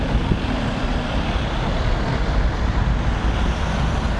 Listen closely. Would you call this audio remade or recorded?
recorded